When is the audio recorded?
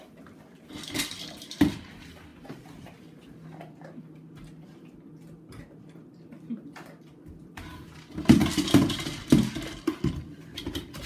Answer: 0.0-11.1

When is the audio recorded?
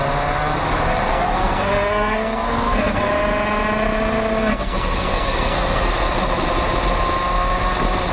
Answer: 0.0-1.1; 3.1-4.3; 5.9-8.1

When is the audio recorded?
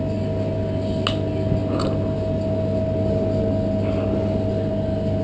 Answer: 0.0-5.2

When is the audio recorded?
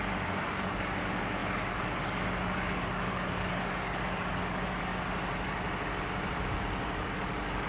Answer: 4.9-7.0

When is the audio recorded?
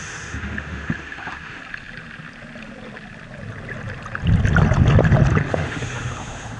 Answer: 1.6-5.5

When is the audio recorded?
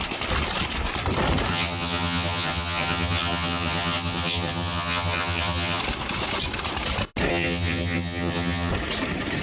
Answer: 0.0-1.5; 5.8-7.3; 8.7-9.4